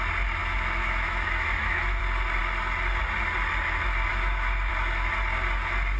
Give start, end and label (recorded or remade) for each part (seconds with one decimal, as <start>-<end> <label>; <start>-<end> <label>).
0.0-0.4 recorded; 0.4-2.0 remade; 2.0-4.1 recorded; 4.1-4.7 remade; 4.7-6.0 recorded